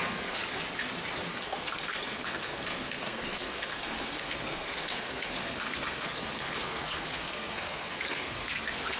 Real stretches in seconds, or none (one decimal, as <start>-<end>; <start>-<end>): 0.4-1.3